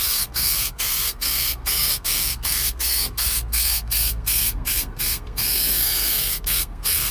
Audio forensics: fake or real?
fake